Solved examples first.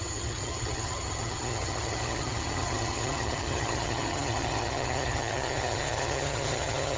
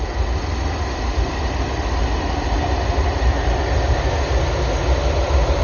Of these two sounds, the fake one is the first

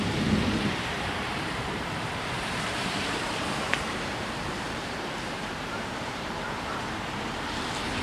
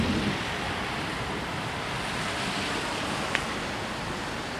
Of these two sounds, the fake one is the first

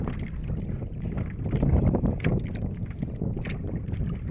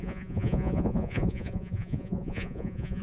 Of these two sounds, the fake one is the second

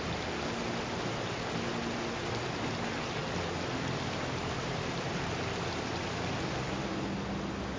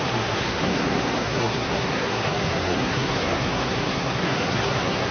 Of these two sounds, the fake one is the second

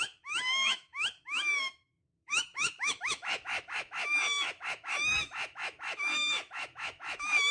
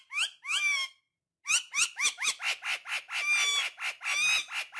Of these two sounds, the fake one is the first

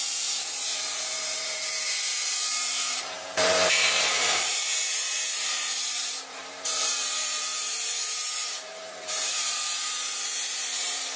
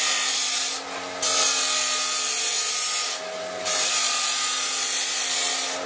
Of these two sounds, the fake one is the first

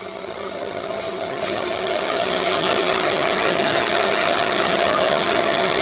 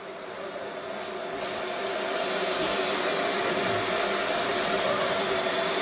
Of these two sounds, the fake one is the first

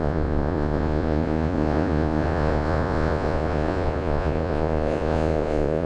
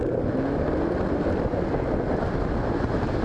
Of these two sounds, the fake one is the first